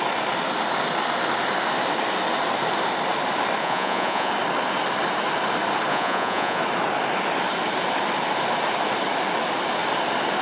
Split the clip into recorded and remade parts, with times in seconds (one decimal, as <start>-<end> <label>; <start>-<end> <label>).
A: 0.0-3.6 recorded; 3.6-4.3 remade; 4.3-5.9 recorded; 5.9-6.6 remade; 6.6-10.4 recorded